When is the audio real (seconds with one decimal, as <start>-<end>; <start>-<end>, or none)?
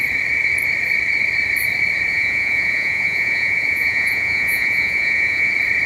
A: 0.0-2.1; 5.5-5.9